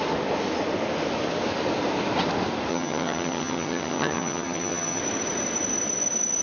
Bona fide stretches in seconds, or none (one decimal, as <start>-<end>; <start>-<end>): 0.0-2.7; 5.0-6.4